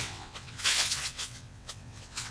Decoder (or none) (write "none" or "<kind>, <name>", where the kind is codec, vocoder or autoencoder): vocoder, WaveNeXt